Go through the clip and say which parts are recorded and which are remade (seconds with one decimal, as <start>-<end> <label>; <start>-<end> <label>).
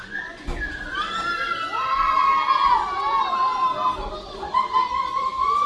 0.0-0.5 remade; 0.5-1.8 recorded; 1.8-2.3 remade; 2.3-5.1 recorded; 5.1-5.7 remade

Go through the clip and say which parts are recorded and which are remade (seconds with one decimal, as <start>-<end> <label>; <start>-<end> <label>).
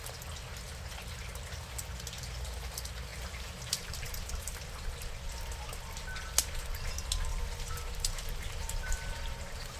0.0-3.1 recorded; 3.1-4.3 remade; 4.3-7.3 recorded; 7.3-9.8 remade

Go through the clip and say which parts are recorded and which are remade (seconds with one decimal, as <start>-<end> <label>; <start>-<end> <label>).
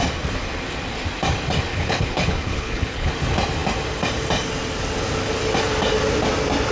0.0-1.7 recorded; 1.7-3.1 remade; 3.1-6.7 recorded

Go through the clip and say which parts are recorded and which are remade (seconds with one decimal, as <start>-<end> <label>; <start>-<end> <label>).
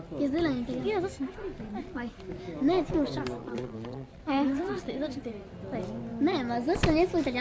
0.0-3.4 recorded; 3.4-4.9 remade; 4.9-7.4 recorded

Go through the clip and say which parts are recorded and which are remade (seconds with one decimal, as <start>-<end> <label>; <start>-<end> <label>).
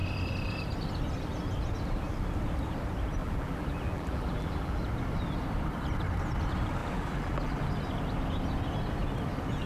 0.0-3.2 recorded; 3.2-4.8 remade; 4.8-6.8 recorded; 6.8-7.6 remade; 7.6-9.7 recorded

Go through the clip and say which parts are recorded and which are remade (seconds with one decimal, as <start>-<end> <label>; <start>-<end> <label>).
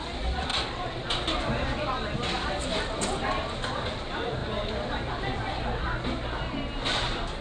0.0-7.4 recorded